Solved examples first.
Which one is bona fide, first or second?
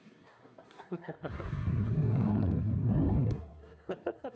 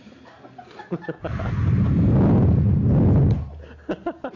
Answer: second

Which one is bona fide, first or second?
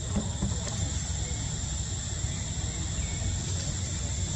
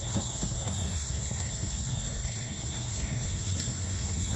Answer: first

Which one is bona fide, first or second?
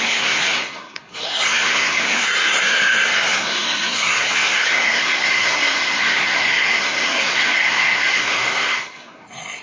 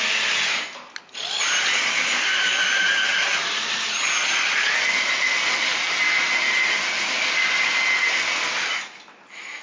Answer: second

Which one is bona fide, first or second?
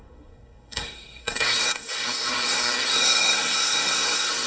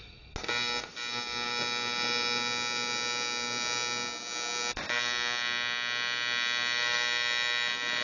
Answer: second